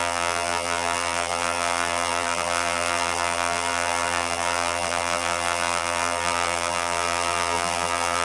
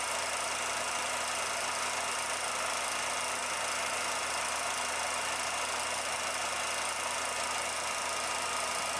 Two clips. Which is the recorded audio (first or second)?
second